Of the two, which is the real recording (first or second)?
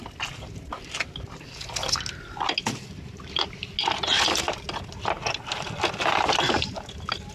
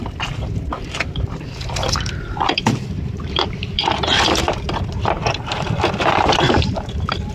first